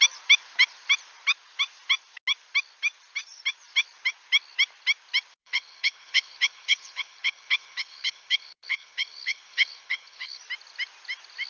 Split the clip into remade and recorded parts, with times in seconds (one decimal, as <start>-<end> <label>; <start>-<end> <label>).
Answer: 0.0-5.4 recorded; 5.4-10.4 remade; 10.4-11.5 recorded